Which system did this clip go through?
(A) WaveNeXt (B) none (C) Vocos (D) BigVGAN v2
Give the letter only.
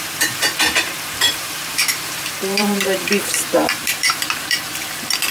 D